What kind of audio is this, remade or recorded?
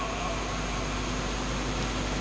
recorded